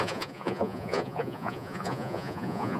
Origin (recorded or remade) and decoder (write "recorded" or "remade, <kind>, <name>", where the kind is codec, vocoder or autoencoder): remade, vocoder, Vocos